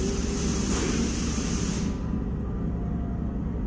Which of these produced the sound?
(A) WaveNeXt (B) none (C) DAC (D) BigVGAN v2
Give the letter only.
B